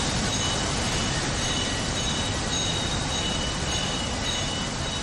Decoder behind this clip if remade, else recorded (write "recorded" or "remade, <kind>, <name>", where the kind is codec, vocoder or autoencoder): recorded